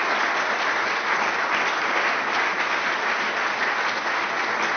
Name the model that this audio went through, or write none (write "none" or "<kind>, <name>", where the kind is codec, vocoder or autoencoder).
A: none